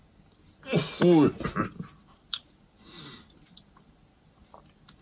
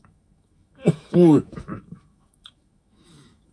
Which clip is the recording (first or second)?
first